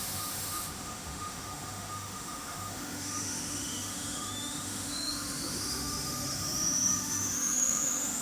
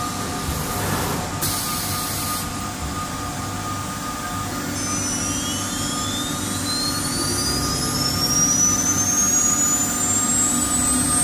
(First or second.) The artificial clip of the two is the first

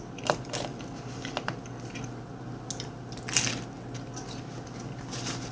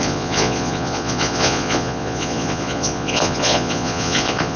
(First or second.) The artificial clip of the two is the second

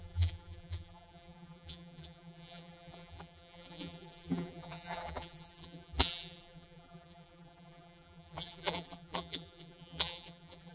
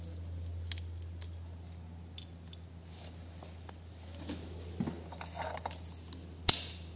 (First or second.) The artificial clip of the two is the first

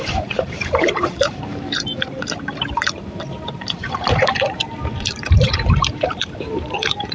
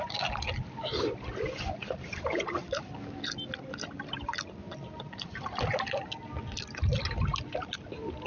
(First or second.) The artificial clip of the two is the first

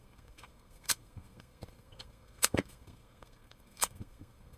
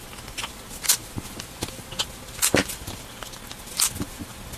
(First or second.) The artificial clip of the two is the first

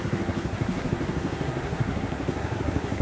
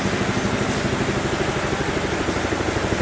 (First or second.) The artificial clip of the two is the first